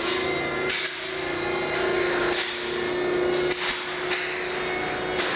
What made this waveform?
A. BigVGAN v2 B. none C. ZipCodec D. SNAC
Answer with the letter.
B